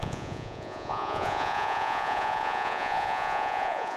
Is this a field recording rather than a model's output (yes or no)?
no